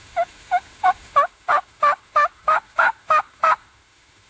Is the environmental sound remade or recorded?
remade